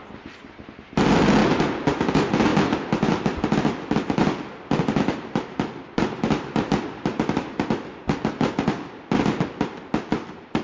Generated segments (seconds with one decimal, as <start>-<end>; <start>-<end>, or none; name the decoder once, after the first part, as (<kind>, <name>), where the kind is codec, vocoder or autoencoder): none